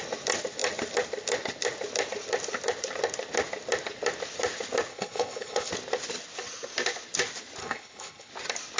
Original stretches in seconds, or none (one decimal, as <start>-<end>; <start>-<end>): 0.0-4.9; 5.7-7.6; 8.3-8.8